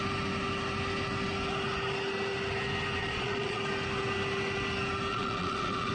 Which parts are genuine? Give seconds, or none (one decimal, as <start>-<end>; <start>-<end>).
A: 0.0-3.0; 3.6-5.1